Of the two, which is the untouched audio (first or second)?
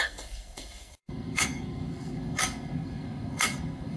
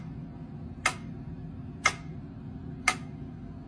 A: second